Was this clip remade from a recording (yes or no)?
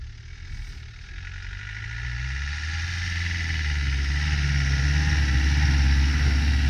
no